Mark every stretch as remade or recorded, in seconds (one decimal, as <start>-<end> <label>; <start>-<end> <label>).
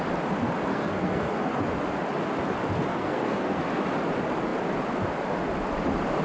0.0-0.7 recorded; 0.7-1.6 remade; 1.6-2.9 recorded; 2.9-3.6 remade; 3.6-6.2 recorded